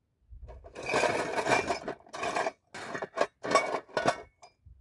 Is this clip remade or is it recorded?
recorded